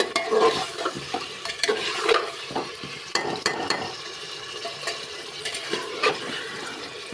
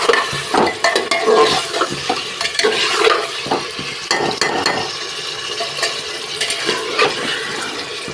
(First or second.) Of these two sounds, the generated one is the first